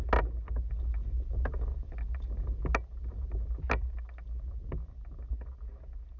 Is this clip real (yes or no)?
yes